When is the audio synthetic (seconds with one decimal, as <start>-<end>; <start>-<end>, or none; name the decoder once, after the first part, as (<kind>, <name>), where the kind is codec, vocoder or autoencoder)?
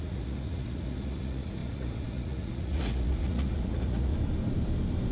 0.0-4.1 (vocoder, Vocos)